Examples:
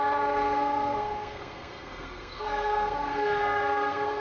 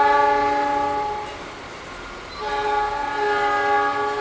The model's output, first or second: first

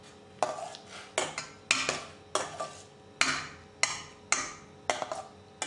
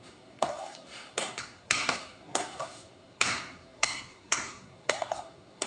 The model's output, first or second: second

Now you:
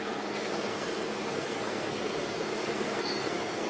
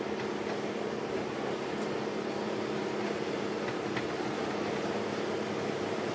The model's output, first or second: first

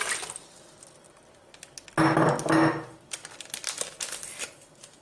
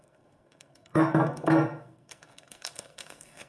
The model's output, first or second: second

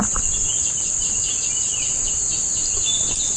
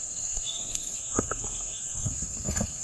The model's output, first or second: second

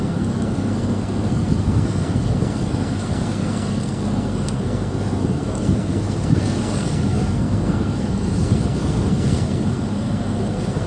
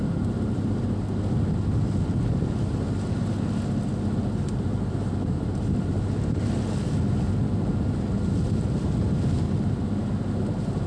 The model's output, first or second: first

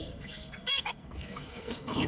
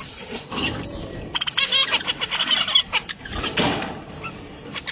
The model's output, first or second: first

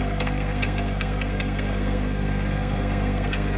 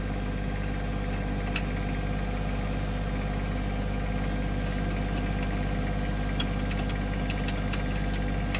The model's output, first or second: first